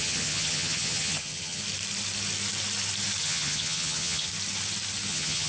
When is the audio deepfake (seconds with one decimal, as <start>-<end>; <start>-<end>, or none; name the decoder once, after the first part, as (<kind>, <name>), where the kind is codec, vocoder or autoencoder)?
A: 0.0-1.6 (vocoder, HiFi-GAN); 3.2-4.3; 5.1-5.5